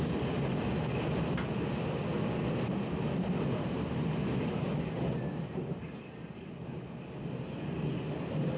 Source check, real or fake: real